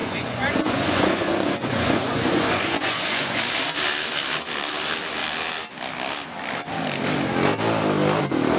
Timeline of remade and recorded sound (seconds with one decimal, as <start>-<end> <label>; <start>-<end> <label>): 0.0-3.4 remade; 3.4-8.6 recorded